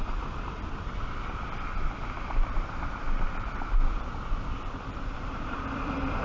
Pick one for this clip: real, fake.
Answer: fake